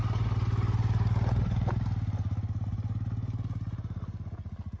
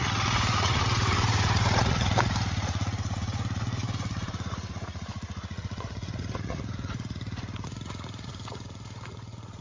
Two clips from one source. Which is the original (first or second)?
first